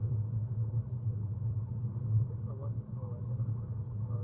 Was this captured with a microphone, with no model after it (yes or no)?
no